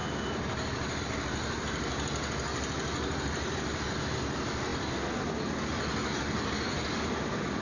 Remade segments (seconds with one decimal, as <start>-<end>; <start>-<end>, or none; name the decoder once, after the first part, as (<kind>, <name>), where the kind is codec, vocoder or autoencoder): none